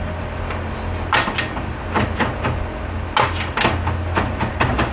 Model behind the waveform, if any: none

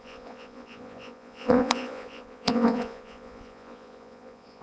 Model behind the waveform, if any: vocoder, Vocos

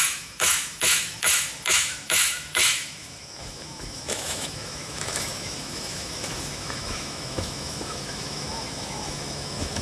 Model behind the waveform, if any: autoencoder, DAC-VAE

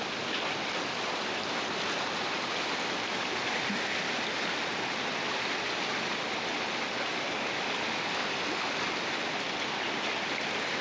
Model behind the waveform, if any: none